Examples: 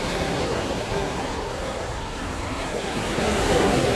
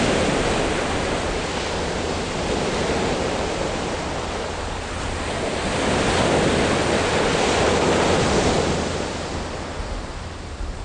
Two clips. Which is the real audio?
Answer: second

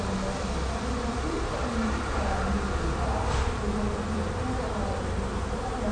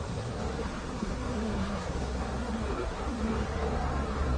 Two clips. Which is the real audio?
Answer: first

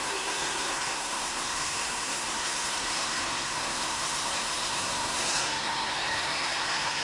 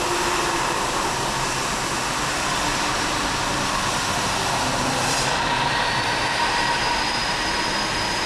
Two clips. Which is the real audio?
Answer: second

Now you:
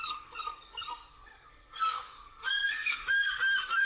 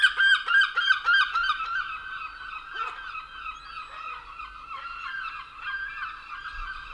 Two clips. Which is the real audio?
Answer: second